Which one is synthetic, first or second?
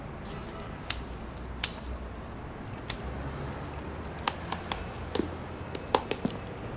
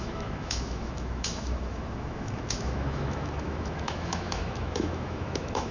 second